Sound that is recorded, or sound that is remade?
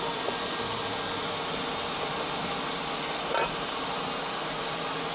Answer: recorded